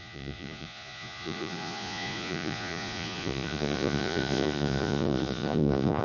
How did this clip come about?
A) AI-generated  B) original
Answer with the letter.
A